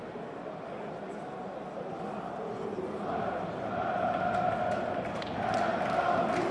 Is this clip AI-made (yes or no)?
no